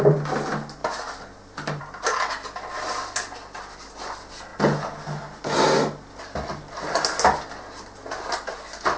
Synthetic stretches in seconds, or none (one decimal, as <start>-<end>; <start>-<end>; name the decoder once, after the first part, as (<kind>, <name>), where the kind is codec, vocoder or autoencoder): none